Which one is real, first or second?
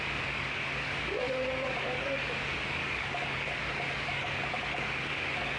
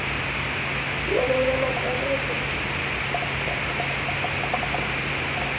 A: second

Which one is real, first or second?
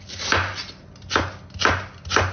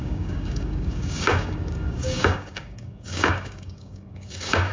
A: first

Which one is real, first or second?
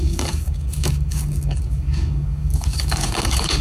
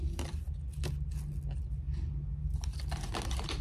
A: second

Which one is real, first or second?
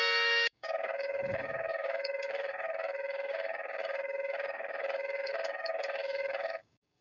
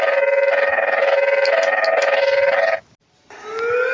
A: second